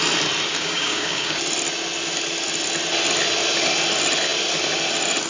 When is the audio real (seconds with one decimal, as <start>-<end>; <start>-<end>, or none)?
0.0-0.6; 1.4-5.3